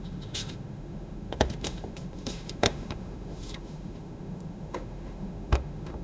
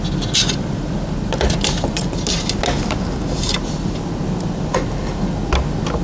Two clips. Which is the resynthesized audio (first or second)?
first